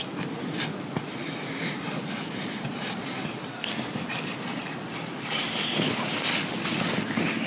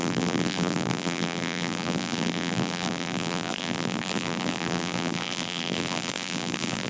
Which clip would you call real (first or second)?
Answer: first